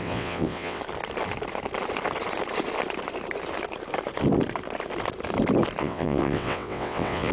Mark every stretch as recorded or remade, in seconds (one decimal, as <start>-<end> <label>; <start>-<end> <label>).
0.0-0.8 remade; 0.8-5.8 recorded; 5.8-7.3 remade